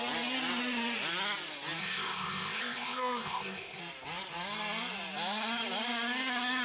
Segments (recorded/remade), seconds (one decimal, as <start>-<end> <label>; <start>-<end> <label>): 0.0-1.8 recorded; 1.8-3.8 remade; 3.8-6.6 recorded